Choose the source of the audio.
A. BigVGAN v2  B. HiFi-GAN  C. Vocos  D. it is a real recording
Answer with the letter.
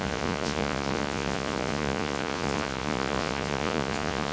C